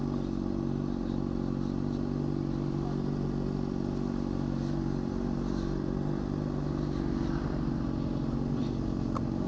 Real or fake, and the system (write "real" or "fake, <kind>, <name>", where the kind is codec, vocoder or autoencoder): real